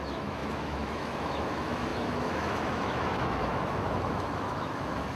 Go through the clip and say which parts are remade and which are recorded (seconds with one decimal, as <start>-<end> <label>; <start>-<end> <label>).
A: 0.0-5.2 remade